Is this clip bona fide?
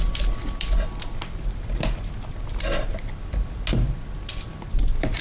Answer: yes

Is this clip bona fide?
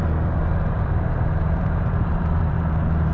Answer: no